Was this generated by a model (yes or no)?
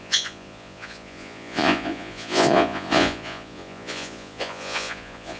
yes